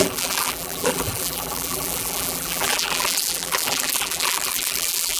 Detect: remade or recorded remade